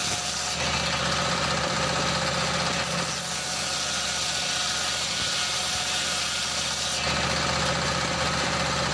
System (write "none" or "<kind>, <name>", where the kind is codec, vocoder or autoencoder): none